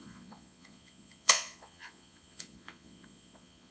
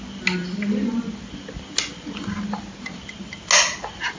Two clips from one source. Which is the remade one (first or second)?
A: first